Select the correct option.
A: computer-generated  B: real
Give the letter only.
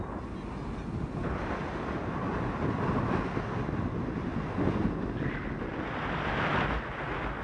B